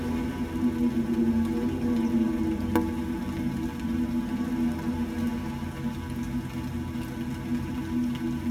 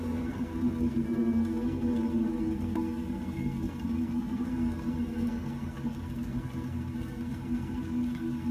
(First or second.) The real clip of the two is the first